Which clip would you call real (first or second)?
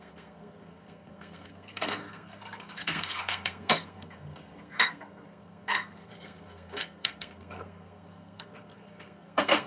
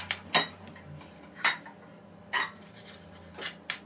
second